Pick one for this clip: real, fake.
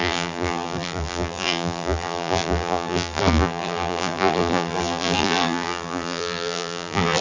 fake